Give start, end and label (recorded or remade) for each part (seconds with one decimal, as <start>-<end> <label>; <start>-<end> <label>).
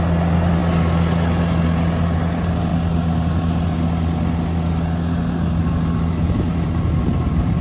0.0-7.6 recorded